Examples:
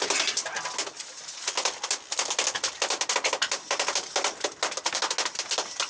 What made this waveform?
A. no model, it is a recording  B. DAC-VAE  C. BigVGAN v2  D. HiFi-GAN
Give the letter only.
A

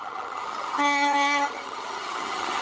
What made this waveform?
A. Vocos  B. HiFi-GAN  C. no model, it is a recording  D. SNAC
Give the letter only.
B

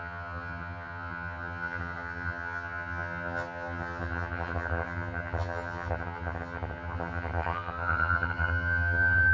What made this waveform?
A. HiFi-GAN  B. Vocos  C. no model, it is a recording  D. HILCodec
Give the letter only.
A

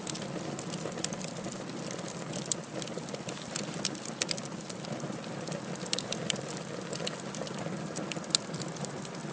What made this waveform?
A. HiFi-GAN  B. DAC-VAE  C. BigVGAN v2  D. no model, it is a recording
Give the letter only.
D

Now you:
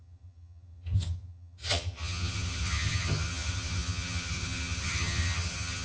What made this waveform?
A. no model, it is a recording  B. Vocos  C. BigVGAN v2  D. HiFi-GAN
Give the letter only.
D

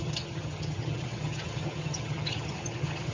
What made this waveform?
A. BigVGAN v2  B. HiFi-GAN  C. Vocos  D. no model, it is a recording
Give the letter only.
B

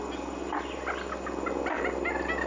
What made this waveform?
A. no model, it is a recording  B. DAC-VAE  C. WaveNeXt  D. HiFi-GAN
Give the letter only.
A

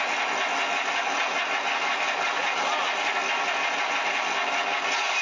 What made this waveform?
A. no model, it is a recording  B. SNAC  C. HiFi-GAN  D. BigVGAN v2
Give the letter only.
A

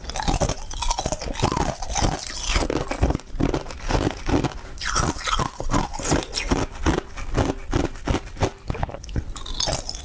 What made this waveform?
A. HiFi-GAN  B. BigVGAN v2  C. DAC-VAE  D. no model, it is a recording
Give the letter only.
D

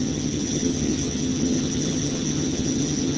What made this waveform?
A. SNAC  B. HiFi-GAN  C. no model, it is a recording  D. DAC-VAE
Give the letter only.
B